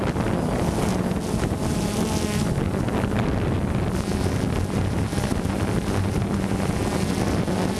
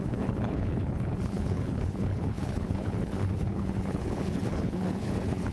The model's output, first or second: second